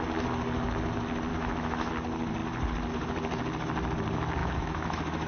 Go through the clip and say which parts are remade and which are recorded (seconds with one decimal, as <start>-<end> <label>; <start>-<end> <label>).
0.0-1.3 recorded; 1.3-1.9 remade; 1.9-4.4 recorded; 4.4-5.3 remade